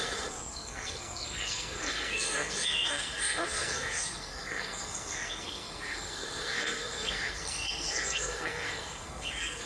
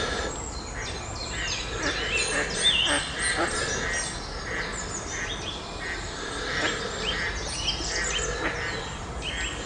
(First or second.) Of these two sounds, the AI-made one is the first